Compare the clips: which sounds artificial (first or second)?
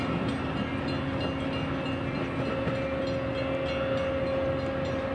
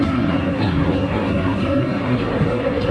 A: second